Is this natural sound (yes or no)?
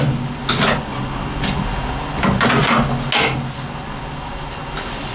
yes